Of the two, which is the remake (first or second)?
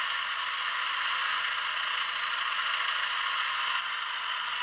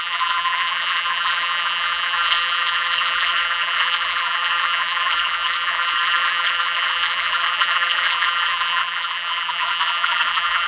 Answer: second